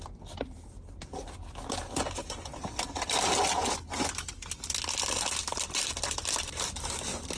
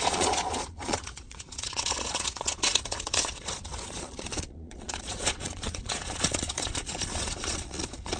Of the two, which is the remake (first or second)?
second